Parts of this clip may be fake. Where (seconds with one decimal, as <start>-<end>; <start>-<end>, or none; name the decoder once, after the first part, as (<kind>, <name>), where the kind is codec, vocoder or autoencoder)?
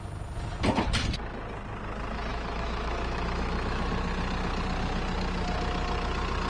2.3-3.9 (autoencoder, DAC-VAE)